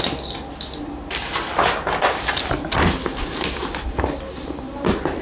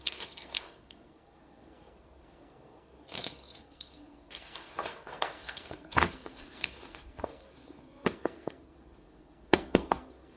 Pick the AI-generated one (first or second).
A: second